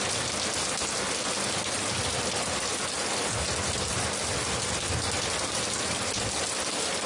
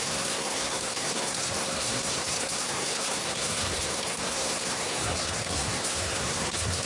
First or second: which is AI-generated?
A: second